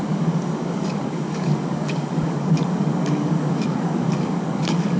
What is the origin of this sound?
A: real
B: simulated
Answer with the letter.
B